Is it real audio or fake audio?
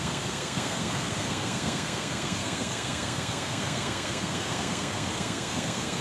fake